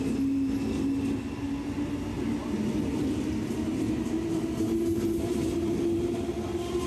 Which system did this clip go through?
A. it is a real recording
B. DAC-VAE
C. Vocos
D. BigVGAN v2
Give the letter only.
A